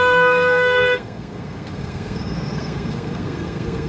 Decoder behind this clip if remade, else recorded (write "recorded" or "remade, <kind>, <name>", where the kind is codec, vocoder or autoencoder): remade, codec, SNAC